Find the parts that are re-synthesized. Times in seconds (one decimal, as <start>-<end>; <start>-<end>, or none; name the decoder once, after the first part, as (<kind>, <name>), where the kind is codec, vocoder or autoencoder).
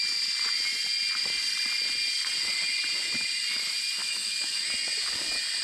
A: 4.0-4.7 (autoencoder, DAC-VAE)